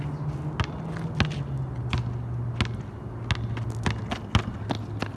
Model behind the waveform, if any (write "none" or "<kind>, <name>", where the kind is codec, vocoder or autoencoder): none